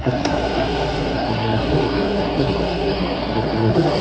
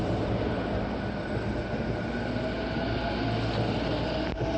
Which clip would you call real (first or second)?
second